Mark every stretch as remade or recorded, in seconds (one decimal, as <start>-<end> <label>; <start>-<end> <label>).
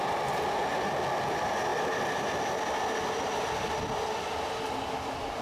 0.0-5.4 recorded